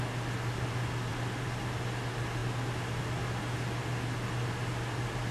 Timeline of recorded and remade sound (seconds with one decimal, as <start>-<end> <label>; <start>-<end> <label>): 0.0-5.3 recorded